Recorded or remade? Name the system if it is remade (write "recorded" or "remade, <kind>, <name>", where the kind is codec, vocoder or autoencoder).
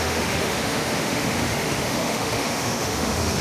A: remade, autoencoder, DAC-VAE